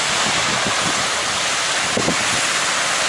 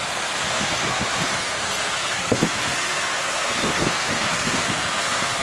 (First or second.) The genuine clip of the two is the first